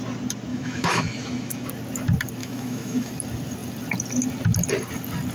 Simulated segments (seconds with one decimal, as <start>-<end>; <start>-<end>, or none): 0.5-1.7; 2.4-3.1